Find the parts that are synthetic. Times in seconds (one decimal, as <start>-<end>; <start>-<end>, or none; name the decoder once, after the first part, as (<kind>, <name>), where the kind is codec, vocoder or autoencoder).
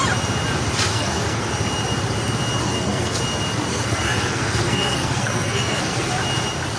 0.9-1.5 (codec, SNAC); 2.6-3.2; 3.7-6.1